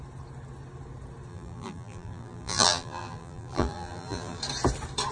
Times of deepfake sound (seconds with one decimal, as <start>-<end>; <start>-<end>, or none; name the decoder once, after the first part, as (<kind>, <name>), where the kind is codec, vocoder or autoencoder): 1.3-4.4 (vocoder, BigVGAN v2)